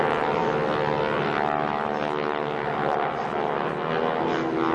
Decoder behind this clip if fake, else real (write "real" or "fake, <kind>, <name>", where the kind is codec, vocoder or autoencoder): real